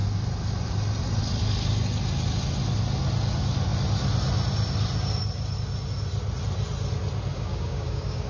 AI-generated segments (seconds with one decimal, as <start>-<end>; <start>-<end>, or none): 7.3-8.3